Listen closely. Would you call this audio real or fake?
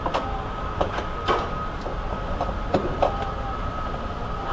real